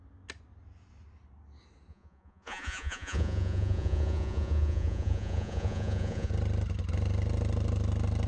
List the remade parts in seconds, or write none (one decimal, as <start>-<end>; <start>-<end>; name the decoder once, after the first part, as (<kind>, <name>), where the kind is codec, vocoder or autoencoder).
1.9-6.3 (vocoder, Vocos)